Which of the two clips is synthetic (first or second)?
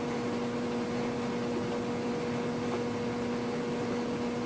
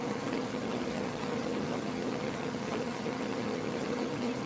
second